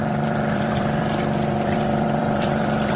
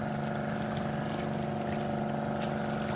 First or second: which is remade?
first